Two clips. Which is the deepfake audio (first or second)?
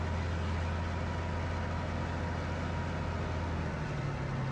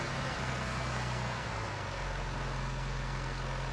second